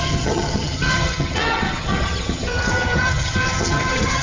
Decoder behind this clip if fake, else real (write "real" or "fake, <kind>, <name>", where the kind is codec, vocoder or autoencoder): fake, vocoder, HiFi-GAN